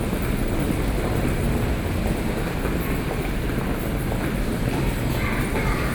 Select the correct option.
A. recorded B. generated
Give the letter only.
A